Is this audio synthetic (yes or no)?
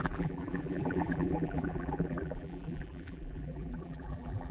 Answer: yes